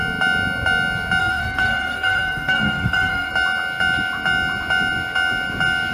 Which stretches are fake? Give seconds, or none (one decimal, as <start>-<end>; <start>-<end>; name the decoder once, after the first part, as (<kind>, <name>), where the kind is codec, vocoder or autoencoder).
1.2-3.3 (codec, SNAC)